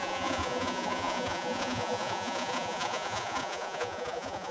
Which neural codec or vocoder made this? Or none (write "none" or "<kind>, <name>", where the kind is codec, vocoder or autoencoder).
vocoder, Vocos